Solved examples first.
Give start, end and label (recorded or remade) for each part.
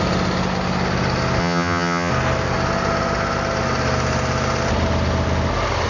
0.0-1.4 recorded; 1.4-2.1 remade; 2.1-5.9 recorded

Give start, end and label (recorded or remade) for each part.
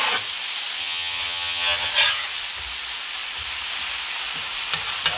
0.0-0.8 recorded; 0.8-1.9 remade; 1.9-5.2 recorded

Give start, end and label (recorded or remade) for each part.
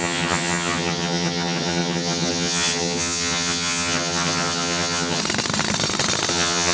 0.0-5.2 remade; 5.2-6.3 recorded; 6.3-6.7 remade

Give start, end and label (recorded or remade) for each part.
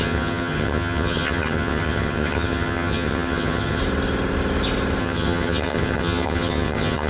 0.0-3.8 remade; 3.8-5.0 recorded; 5.0-7.1 remade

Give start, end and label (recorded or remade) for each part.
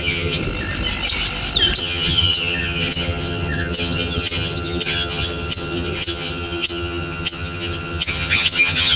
0.0-0.4 remade; 0.4-1.8 recorded; 1.8-9.0 remade